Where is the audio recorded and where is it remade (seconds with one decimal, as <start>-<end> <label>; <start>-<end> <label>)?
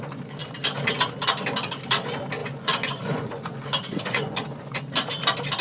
0.0-2.4 recorded; 2.4-4.8 remade; 4.8-5.6 recorded